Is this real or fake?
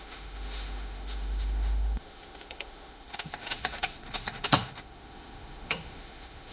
fake